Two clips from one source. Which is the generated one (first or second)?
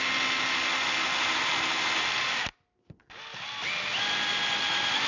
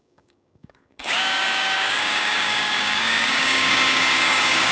second